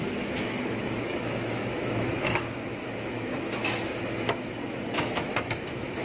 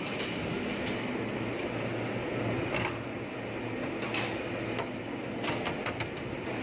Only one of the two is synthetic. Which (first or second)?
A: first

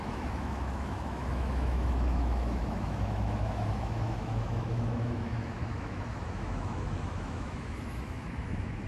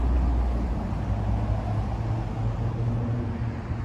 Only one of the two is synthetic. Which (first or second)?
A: first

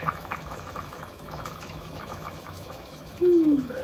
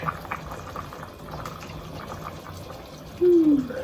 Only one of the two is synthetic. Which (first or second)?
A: first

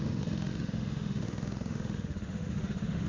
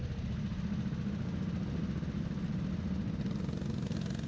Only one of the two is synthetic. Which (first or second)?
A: first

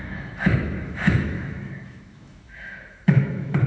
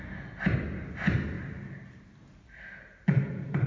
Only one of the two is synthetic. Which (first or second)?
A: first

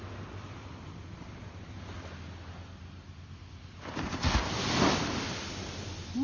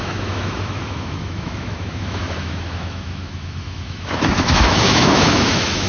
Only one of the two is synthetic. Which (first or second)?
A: second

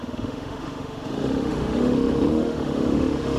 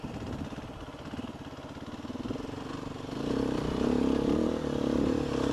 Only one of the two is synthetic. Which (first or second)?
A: first